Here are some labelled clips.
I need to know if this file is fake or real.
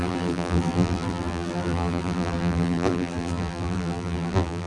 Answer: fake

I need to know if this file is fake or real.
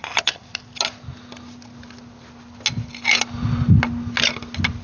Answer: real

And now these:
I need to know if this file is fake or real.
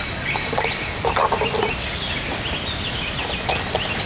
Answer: real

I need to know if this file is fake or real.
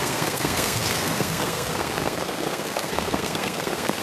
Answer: fake